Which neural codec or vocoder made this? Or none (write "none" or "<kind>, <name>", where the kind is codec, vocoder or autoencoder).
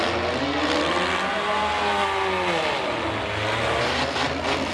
none